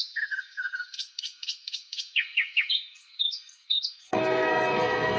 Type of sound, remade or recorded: remade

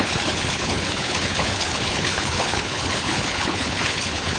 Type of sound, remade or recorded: remade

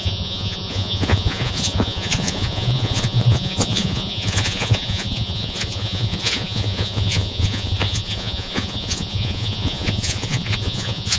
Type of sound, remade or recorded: remade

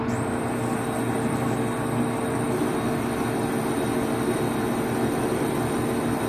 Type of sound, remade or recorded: recorded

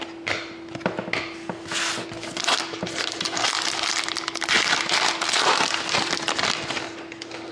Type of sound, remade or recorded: recorded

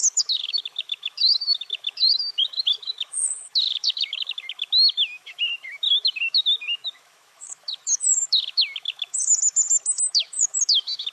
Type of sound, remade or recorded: remade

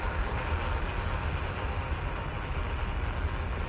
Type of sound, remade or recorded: recorded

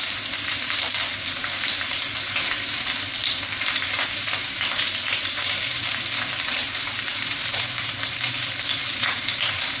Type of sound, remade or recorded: remade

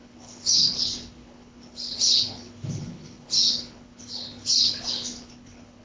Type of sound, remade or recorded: remade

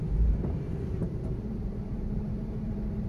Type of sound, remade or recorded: remade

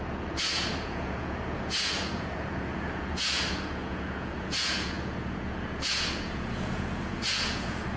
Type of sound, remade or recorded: remade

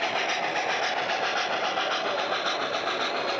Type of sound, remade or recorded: recorded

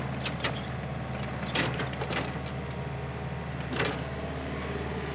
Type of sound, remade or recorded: recorded